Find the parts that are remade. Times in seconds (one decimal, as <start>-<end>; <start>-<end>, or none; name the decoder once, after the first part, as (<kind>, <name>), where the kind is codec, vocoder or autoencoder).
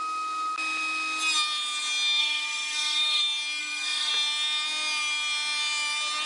2.2-3.2 (codec, SNAC); 3.6-4.1